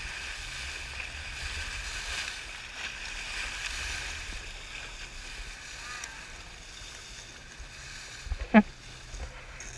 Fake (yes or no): no